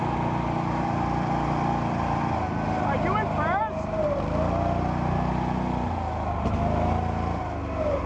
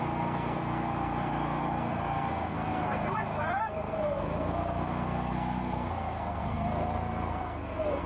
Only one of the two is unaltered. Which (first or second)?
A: first